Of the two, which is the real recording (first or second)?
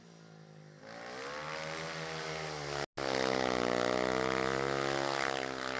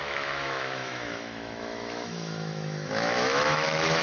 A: first